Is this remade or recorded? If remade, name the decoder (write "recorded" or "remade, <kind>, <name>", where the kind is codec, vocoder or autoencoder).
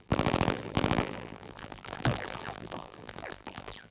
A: remade, vocoder, BigVGAN v2